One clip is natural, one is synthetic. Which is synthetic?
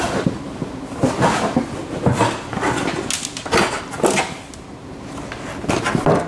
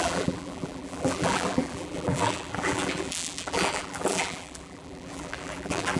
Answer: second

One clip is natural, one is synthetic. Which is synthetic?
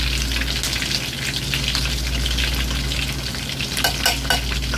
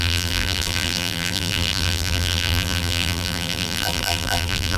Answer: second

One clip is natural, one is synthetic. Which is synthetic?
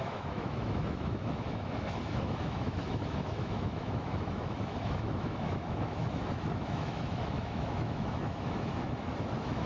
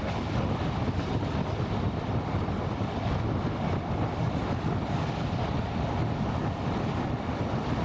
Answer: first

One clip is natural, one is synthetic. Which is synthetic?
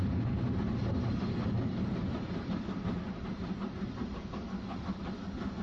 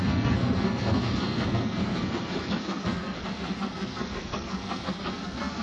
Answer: second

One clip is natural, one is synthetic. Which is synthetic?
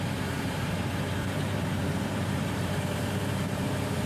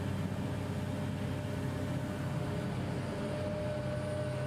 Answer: first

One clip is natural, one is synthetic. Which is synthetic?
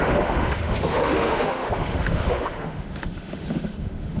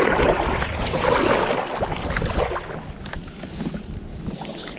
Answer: first